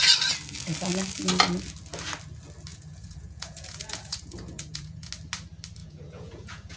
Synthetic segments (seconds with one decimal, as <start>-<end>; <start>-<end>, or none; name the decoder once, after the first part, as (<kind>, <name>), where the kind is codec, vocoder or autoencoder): 2.7-5.1 (vocoder, Vocos); 5.8-6.8